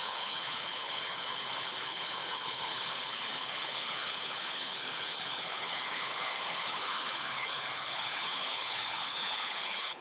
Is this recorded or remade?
remade